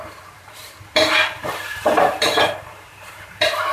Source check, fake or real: fake